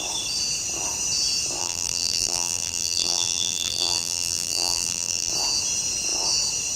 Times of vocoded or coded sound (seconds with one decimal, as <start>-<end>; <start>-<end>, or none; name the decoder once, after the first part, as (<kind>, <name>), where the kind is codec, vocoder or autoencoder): 1.6-5.3 (vocoder, BigVGAN v2)